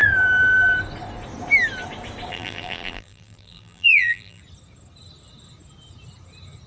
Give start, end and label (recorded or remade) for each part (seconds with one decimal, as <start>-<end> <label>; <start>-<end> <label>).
0.0-2.3 recorded; 2.3-4.4 remade; 4.4-6.7 recorded

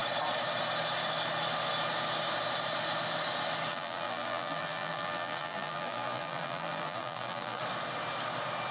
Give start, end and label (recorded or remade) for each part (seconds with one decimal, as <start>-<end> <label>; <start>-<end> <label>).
0.0-3.7 recorded; 3.7-7.6 remade; 7.6-8.7 recorded

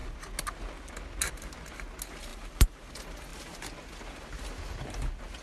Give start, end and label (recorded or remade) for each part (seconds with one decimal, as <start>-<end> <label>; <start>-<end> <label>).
0.0-2.3 recorded; 2.3-2.9 remade; 2.9-5.4 recorded

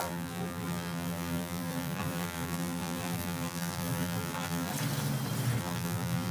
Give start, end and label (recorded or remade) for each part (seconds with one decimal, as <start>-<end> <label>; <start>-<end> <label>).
0.0-4.7 remade; 4.7-5.6 recorded; 5.6-6.3 remade